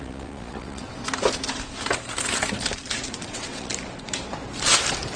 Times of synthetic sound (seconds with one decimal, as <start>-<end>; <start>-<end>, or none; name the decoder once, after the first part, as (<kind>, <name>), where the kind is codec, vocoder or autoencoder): 0.0-1.0 (vocoder, WaveNeXt); 3.2-3.7